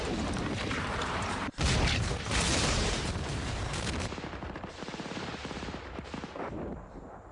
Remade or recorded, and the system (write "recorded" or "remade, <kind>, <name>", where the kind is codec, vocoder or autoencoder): remade, vocoder, BigVGAN v2